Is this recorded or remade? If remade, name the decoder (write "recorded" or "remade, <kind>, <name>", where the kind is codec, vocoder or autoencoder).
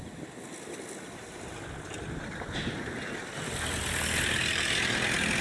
recorded